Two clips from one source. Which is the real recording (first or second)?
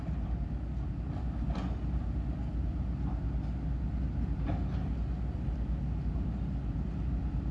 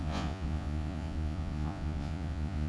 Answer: first